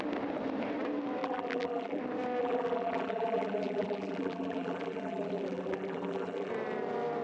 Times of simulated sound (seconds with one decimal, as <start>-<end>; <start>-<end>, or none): 1.2-2.0; 2.4-6.5